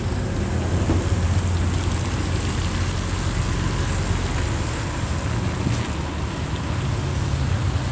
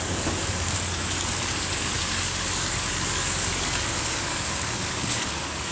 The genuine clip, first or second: first